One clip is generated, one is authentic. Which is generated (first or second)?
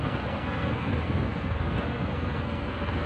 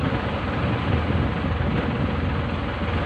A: first